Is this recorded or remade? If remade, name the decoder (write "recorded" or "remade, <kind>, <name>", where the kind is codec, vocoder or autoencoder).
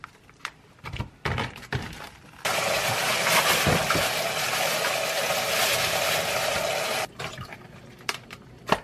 recorded